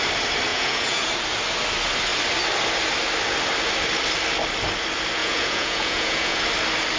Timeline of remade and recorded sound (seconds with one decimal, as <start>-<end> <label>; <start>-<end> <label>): 0.0-0.5 recorded; 0.5-1.1 remade; 1.1-5.2 recorded; 5.2-6.4 remade; 6.4-7.0 recorded